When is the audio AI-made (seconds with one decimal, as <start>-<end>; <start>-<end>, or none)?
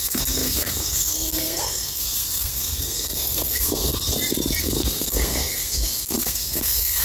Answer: 0.0-3.9; 4.6-7.0